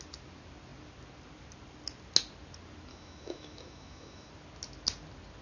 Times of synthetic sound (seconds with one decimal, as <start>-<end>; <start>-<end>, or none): 2.9-4.3